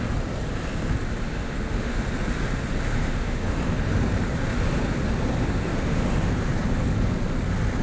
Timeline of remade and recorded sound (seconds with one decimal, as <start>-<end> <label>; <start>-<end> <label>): 0.0-1.3 recorded; 1.3-2.0 remade; 2.0-2.9 recorded; 2.9-3.6 remade; 3.6-5.7 recorded; 5.7-6.3 remade; 6.3-7.8 recorded